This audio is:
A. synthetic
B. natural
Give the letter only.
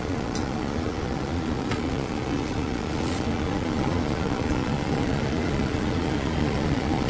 A